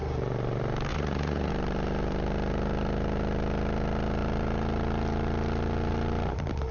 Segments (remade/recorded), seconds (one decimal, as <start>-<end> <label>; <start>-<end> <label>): 0.0-0.9 recorded; 0.9-1.5 remade; 1.5-6.7 recorded